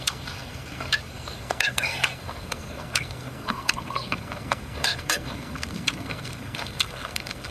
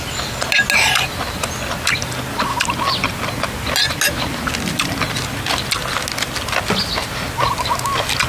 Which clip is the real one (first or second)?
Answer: second